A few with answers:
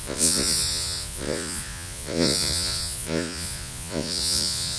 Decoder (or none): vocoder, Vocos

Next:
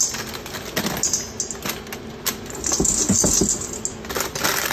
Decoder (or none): none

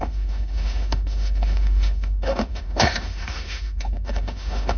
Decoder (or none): autoencoder, DAC-VAE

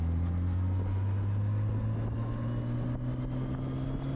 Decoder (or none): none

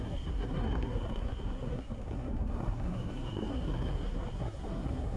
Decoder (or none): codec, SNAC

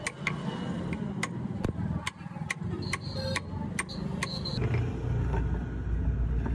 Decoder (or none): none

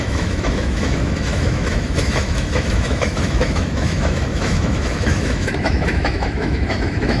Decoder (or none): autoencoder, DAC-VAE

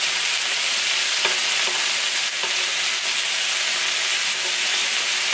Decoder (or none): none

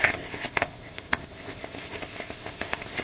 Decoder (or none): codec, ZipCodec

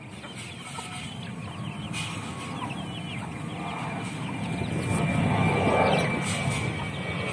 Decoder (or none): none